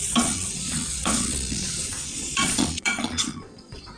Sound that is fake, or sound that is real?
fake